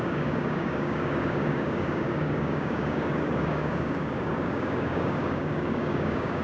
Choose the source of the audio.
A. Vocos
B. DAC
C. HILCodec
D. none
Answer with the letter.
B